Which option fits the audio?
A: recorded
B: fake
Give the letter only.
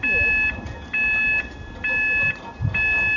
A